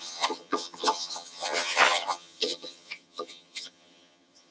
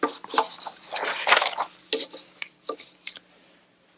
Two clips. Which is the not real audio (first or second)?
first